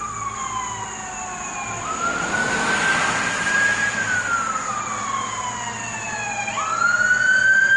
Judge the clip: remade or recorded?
recorded